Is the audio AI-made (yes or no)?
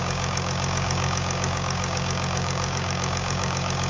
yes